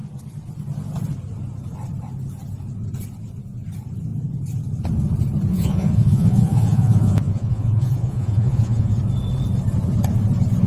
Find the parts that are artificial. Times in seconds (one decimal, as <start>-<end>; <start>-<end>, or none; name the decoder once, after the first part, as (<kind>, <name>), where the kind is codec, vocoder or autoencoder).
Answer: 5.5-9.0 (vocoder, Vocos)